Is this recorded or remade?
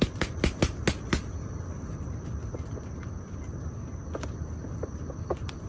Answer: recorded